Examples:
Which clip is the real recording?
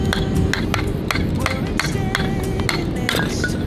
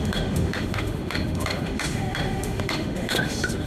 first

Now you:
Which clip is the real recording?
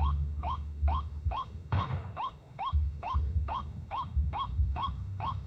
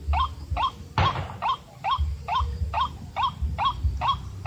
second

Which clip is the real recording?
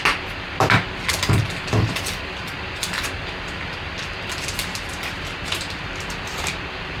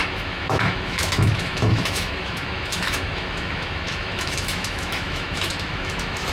first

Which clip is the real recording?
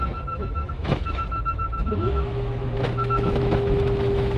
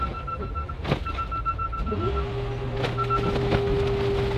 second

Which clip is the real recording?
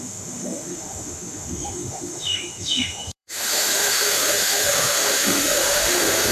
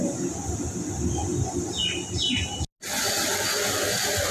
second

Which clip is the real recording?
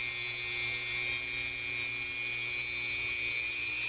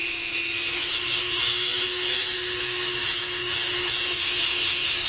first